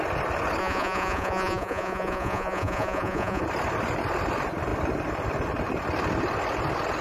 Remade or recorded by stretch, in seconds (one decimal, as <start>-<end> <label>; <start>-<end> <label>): 0.0-0.6 recorded; 0.6-3.4 remade; 3.4-7.0 recorded

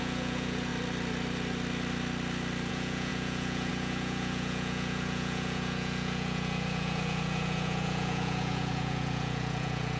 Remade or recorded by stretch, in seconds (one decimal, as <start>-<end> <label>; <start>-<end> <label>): 0.0-0.7 remade; 0.7-2.7 recorded; 2.7-10.0 remade